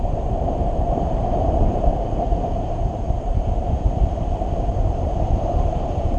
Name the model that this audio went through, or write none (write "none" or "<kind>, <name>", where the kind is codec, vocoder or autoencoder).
vocoder, BigVGAN v2